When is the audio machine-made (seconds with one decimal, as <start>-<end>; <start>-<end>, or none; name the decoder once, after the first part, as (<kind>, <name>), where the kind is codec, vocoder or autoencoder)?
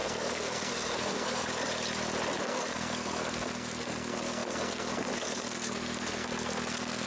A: 0.0-1.5 (codec, SNAC); 2.4-7.1